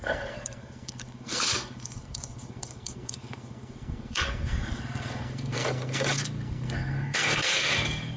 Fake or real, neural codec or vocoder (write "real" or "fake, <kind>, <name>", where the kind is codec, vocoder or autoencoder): fake, codec, SNAC